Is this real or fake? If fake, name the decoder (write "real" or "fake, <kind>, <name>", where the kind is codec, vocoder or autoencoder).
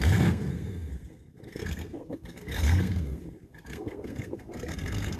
fake, codec, SNAC